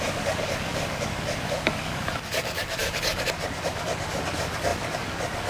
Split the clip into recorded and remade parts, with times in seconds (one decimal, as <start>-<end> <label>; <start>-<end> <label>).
0.0-5.5 remade